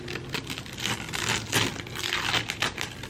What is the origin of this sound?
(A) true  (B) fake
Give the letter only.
A